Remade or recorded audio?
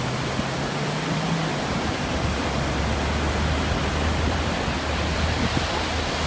recorded